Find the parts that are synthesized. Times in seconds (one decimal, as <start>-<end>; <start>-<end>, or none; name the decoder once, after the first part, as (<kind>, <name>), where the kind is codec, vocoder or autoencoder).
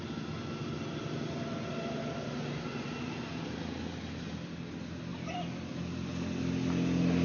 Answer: none